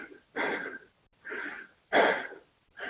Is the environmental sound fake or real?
real